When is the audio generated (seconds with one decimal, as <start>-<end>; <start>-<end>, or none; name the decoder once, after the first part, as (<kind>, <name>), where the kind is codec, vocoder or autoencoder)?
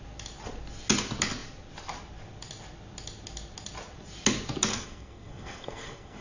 4.7-6.2 (codec, SNAC)